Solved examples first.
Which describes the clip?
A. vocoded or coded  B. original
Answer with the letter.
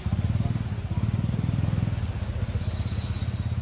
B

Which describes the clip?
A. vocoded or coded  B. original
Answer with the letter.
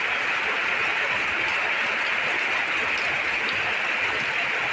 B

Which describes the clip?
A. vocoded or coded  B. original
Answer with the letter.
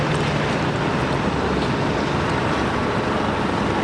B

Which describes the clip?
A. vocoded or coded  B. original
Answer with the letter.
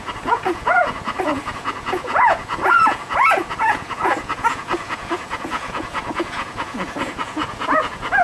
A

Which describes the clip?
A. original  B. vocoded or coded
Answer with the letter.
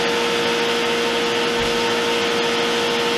A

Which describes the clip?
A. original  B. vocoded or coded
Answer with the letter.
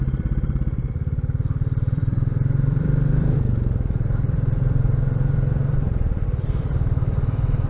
B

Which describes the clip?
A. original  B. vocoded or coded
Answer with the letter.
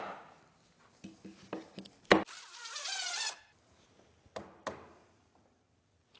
A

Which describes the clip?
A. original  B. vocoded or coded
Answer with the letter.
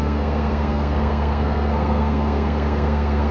B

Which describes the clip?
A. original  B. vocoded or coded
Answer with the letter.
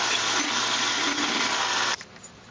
A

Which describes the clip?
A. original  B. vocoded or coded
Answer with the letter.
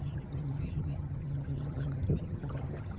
B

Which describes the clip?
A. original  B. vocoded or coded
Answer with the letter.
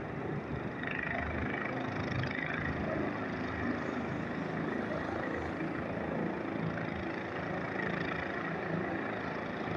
A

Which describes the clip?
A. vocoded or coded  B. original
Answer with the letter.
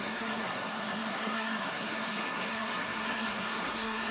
A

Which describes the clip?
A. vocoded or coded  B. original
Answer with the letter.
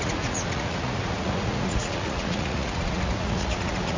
A